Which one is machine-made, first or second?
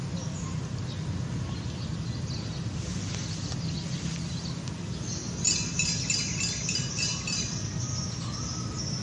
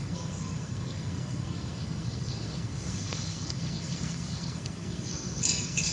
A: second